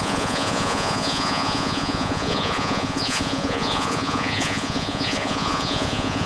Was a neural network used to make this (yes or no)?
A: yes